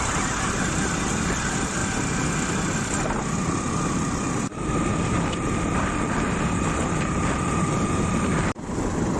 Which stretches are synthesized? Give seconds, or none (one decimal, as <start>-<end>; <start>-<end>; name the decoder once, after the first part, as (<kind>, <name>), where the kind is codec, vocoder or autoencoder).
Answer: none